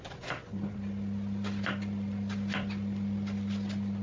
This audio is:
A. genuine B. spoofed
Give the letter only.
A